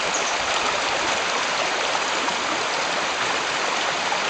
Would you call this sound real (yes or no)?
yes